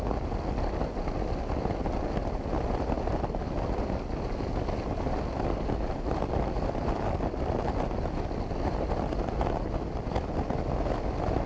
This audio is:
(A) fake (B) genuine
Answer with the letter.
B